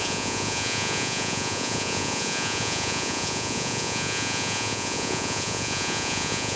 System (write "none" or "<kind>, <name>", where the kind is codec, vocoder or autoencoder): vocoder, Vocos